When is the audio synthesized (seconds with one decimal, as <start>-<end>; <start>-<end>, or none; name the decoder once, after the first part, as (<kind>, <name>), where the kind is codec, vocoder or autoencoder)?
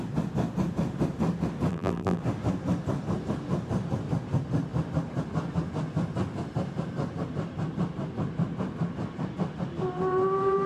1.7-2.2 (vocoder, BigVGAN v2)